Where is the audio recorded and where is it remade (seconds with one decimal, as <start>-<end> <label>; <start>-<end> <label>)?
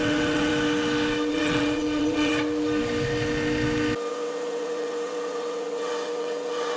0.0-0.5 remade; 0.5-1.3 recorded; 1.3-2.3 remade; 2.3-4.1 recorded; 4.1-6.8 remade